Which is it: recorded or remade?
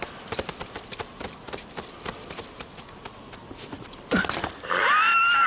recorded